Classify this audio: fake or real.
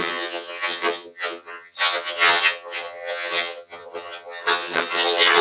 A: fake